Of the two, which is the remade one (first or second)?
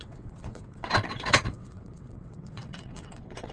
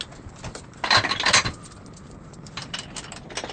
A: first